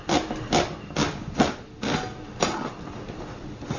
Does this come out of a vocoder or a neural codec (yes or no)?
no